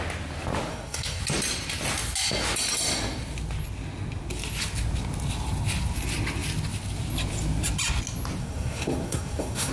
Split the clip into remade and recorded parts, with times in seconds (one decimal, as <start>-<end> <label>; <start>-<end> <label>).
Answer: 0.0-0.7 recorded; 0.7-1.2 remade; 1.2-8.4 recorded; 8.4-9.7 remade